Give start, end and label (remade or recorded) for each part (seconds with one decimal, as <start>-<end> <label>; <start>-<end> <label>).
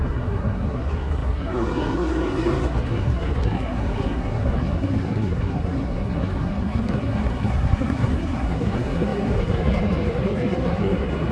0.0-11.3 remade